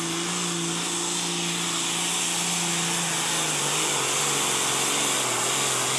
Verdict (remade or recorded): recorded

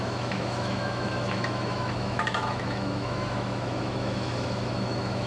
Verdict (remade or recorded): remade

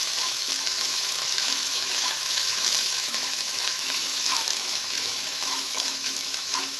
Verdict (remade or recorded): remade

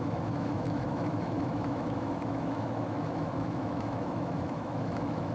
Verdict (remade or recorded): remade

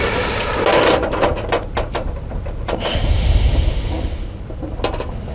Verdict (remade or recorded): recorded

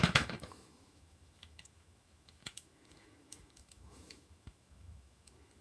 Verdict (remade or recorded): remade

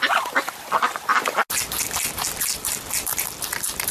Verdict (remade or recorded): recorded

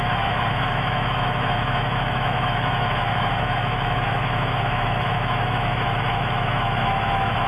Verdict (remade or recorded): remade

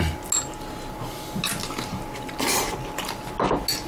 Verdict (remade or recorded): recorded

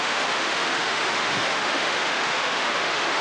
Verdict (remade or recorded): remade